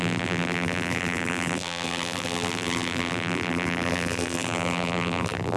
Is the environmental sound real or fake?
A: fake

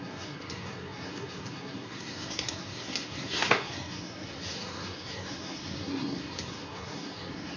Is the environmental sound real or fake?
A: fake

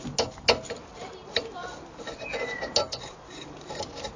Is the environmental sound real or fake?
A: real